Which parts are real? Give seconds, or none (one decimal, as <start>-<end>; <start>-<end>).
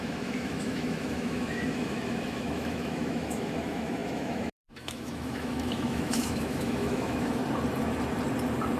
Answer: 7.4-8.8